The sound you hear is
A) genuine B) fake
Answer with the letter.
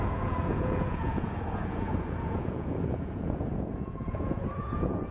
B